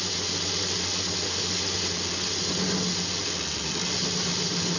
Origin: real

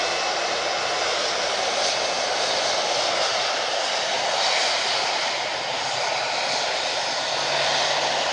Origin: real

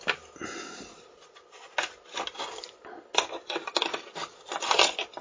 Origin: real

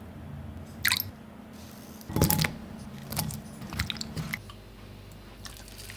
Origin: real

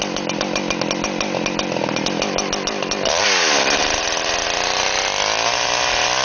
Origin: real